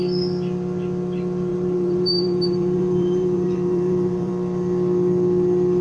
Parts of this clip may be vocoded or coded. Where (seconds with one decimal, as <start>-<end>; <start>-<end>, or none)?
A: 1.5-4.3